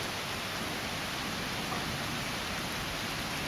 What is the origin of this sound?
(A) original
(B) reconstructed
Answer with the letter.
A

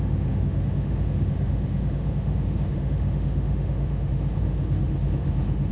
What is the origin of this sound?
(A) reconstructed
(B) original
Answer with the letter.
A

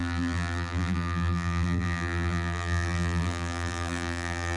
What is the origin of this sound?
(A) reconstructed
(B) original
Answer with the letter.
A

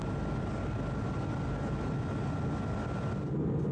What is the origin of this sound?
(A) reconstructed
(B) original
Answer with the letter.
B